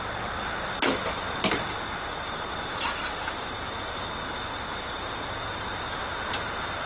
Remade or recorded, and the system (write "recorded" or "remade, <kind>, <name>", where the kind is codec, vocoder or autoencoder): recorded